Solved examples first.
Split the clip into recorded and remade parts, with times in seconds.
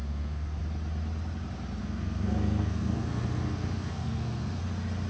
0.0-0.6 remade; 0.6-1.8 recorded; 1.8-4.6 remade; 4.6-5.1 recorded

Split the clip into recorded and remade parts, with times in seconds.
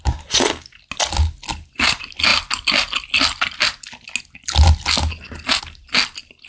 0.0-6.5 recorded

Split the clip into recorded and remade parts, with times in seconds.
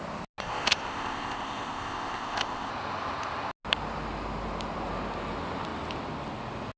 0.0-0.4 recorded; 0.4-2.7 remade; 2.7-6.8 recorded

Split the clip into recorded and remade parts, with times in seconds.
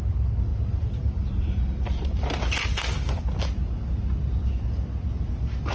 0.0-0.5 recorded; 0.5-3.2 remade; 3.2-5.7 recorded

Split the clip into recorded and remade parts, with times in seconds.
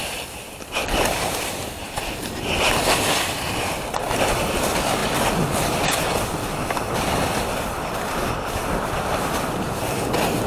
0.0-10.5 recorded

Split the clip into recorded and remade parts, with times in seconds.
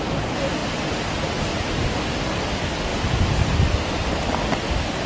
0.0-5.1 recorded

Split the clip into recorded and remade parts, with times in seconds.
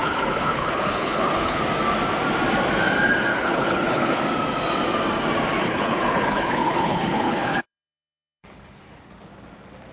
0.0-1.6 remade; 1.6-3.3 recorded; 3.3-4.2 remade; 4.2-5.6 recorded; 5.6-9.1 remade; 9.1-9.9 recorded